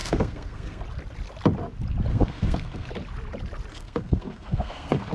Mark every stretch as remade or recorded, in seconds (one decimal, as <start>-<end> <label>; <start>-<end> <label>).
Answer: 0.0-0.8 remade; 0.8-2.1 recorded; 2.1-2.9 remade; 2.9-3.7 recorded; 3.7-5.1 remade